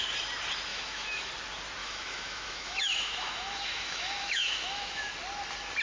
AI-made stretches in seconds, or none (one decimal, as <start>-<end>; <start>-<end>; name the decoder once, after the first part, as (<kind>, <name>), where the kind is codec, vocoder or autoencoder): 0.7-1.3 (autoencoder, DAC-VAE); 1.8-5.1